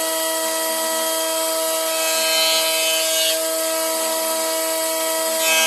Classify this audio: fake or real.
real